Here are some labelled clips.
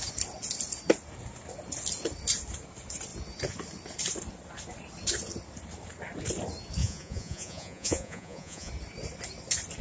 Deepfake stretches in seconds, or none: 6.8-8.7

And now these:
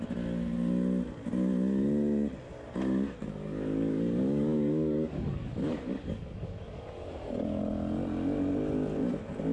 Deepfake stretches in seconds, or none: 3.2-7.6

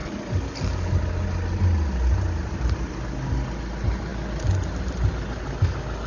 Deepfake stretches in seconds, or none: none

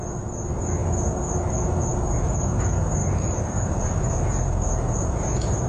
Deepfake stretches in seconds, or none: 3.0-4.2

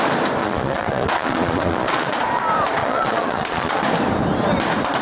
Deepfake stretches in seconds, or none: 0.4-2.2; 2.8-3.8

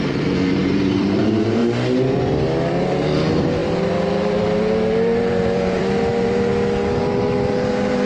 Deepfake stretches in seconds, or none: 0.0-1.6; 2.7-6.5; 7.0-8.1

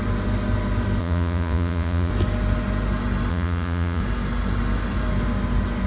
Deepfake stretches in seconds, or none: 1.0-2.1; 3.3-4.0